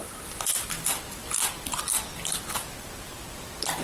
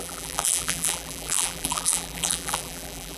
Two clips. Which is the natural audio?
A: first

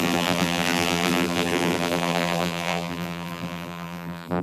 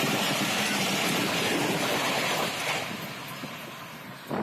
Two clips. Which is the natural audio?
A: second